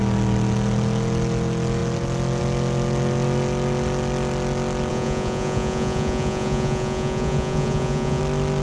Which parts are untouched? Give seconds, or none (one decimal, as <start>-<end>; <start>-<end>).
0.0-4.9; 8.2-8.6